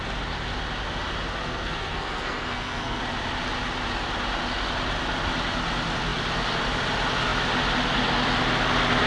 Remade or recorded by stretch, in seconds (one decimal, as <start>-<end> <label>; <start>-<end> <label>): 0.0-1.4 recorded; 1.4-3.0 remade; 3.0-9.1 recorded